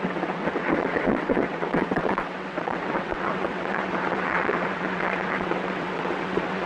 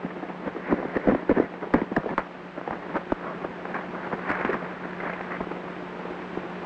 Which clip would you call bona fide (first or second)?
second